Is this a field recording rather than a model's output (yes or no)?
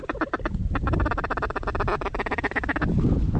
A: yes